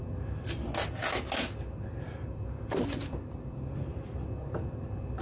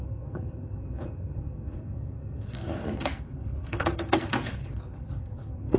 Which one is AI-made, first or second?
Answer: second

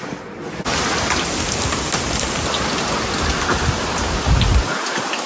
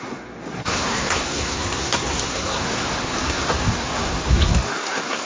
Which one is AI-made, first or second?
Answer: second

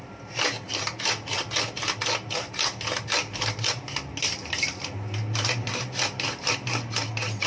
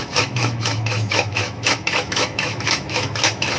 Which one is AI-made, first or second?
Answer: second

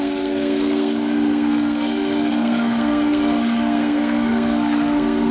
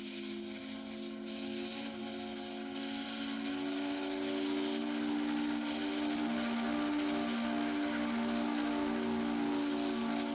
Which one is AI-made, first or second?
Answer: first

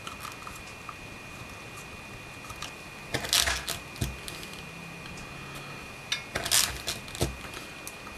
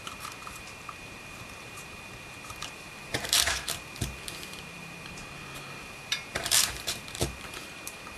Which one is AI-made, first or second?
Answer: second